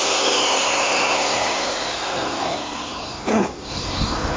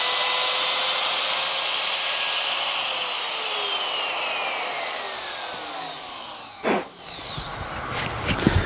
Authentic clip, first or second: second